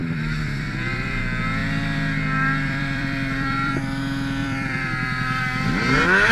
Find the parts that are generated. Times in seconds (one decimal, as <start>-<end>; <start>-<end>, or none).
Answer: 0.0-1.2; 1.6-3.7; 4.4-5.4